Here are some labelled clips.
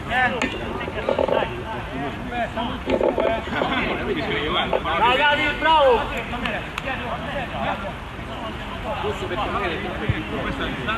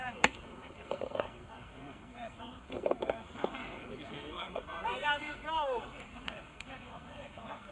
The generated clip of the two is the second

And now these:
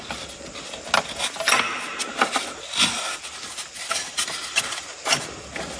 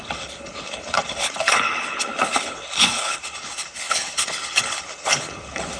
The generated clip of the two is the second